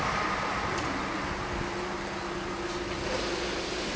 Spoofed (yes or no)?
no